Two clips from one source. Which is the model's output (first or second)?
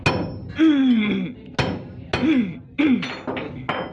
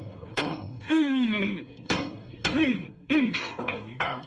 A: second